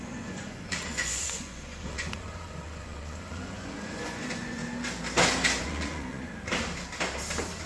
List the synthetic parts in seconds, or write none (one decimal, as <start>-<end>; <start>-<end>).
0.0-4.6; 5.6-6.3